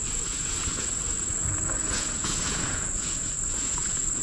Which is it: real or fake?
fake